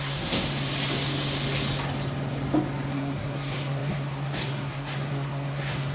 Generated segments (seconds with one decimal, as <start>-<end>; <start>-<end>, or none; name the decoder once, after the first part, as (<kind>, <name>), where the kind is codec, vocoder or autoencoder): 0.0-0.5 (codec, SNAC); 2.9-5.9